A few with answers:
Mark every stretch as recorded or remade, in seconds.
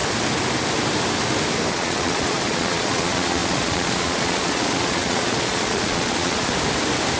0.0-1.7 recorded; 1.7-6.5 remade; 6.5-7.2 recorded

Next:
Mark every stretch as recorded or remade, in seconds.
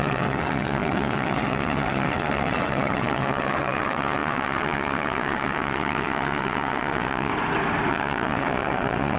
0.0-7.3 remade; 7.3-7.9 recorded; 7.9-9.2 remade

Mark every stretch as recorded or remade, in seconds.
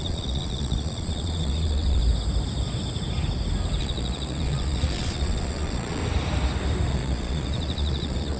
0.0-2.0 remade; 2.0-3.8 recorded; 3.8-6.0 remade; 6.0-6.9 recorded; 6.9-8.4 remade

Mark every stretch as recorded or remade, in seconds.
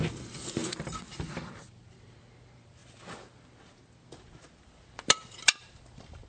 0.0-2.8 remade; 2.8-4.4 recorded; 4.4-6.3 remade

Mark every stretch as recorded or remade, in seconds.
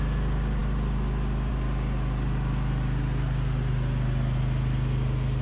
0.0-5.4 recorded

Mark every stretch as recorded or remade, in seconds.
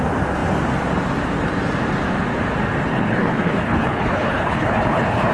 0.0-2.9 recorded; 2.9-5.3 remade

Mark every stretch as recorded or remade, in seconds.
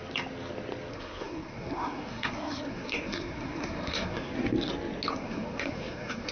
0.0-0.9 recorded; 0.9-4.3 remade; 4.3-5.1 recorded; 5.1-6.3 remade